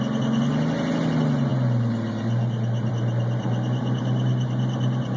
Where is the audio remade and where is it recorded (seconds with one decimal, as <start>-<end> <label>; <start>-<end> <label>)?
0.0-5.2 recorded